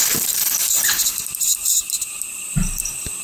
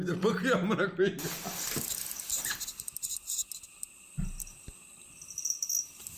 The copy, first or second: first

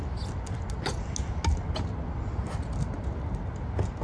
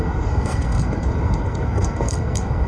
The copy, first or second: second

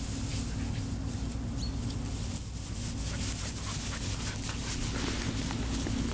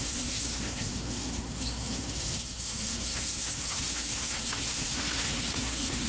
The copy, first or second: second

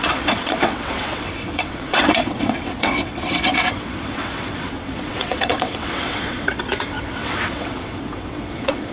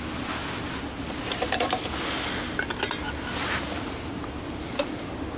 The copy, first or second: first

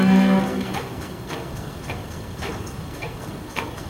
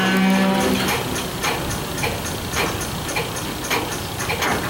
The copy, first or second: first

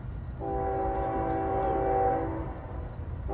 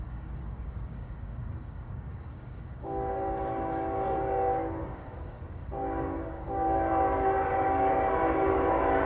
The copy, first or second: second